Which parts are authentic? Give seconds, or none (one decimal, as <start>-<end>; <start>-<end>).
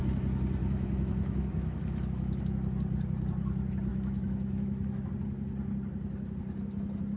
0.0-0.6; 2.4-3.9; 5.1-7.2